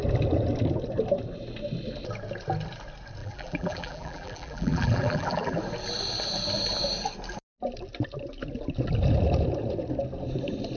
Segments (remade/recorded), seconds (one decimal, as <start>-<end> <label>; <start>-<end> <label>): 0.0-3.2 recorded; 3.2-5.6 remade; 5.6-10.8 recorded